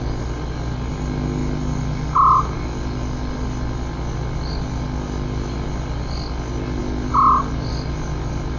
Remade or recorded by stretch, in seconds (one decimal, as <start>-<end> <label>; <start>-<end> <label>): 0.0-8.6 recorded